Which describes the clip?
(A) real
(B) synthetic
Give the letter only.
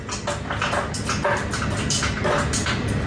A